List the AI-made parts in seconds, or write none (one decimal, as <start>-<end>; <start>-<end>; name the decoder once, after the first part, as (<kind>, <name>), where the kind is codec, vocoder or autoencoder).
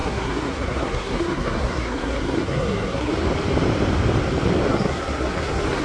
0.0-3.1 (codec, SNAC); 4.7-5.8